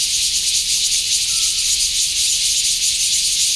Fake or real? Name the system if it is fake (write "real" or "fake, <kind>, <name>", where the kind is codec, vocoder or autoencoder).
real